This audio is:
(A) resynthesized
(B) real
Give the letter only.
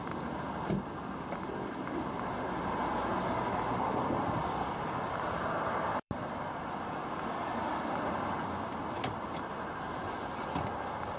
B